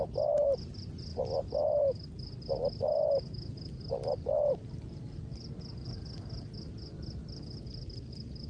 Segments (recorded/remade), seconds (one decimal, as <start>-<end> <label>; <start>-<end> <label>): 0.0-8.5 recorded